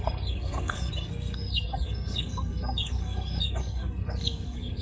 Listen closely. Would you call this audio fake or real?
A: fake